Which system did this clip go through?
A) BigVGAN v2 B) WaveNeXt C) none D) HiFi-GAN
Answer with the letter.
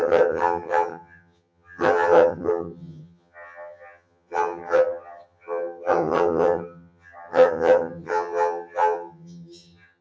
D